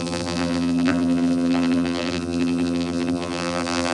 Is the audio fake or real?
fake